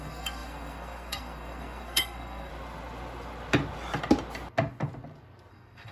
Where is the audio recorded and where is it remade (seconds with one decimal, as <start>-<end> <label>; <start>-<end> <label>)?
0.0-2.5 remade; 2.5-5.5 recorded; 5.5-5.9 remade